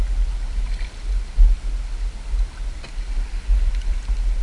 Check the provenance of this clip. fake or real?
real